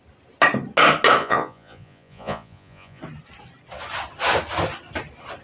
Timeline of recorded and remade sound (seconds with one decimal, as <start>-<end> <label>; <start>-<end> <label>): 0.0-1.2 recorded; 1.2-3.0 remade; 3.0-5.4 recorded